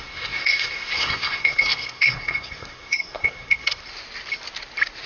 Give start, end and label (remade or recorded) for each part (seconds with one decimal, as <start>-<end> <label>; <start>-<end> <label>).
0.0-3.8 remade; 3.8-5.1 recorded